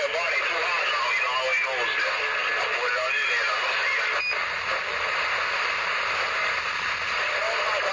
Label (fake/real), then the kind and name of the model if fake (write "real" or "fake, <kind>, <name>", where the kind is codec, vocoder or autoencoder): real